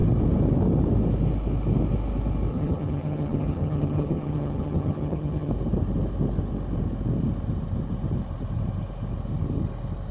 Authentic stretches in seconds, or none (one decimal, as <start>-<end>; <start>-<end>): 0.0-2.5; 5.5-10.1